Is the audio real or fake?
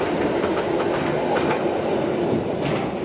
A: real